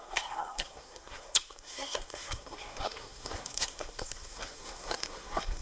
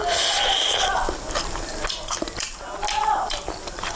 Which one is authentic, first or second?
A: second